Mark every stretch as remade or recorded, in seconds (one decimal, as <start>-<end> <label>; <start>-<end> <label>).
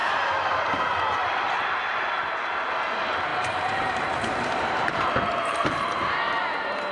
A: 0.0-0.7 remade; 0.7-3.3 recorded; 3.3-6.9 remade